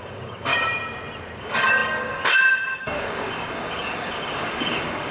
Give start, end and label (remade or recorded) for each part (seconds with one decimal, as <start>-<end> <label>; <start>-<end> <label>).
0.0-0.5 remade; 0.5-1.4 recorded; 1.4-5.1 remade